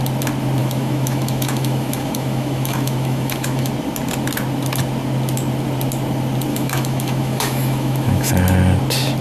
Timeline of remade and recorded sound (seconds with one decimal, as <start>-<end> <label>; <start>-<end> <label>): 0.0-0.6 recorded; 0.6-3.7 remade; 3.7-6.5 recorded; 6.5-8.3 remade; 8.3-9.2 recorded